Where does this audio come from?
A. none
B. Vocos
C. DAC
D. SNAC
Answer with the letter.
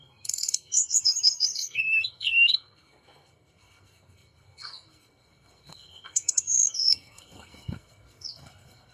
D